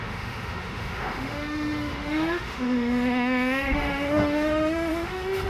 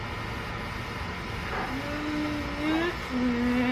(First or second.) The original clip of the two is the second